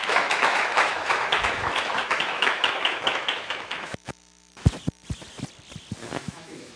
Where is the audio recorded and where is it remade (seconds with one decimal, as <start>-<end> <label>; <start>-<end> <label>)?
0.0-4.5 remade; 4.5-6.2 recorded; 6.2-6.8 remade